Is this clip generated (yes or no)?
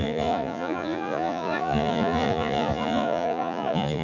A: yes